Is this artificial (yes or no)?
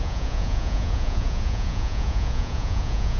yes